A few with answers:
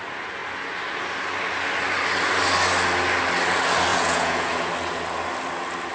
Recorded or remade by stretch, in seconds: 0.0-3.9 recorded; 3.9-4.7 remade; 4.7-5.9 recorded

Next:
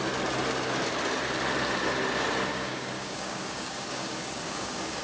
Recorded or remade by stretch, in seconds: 0.0-2.5 recorded; 2.5-5.0 remade

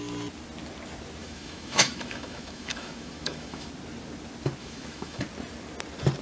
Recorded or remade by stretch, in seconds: 0.0-1.2 recorded; 1.2-3.7 remade; 3.7-4.6 recorded; 4.6-5.2 remade; 5.2-6.2 recorded

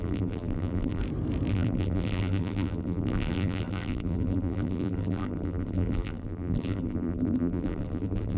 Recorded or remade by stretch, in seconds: 0.0-1.0 remade; 1.0-1.5 recorded; 1.5-8.4 remade

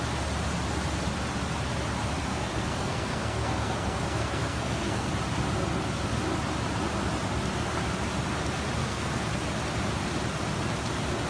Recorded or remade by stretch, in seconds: 0.0-2.3 recorded; 2.3-5.1 remade; 5.1-8.8 recorded; 8.8-9.3 remade; 9.3-11.3 recorded

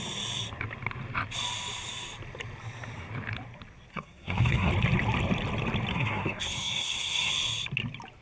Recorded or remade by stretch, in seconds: 0.0-3.9 recorded; 3.9-4.7 remade; 4.7-5.9 recorded; 5.9-7.3 remade; 7.3-8.2 recorded

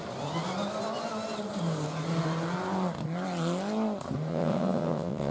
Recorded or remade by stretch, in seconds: 0.0-4.3 recorded; 4.3-5.3 remade

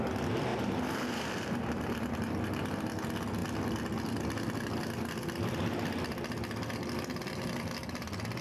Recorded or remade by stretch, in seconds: 0.0-0.5 recorded; 0.5-2.5 remade; 2.5-8.4 recorded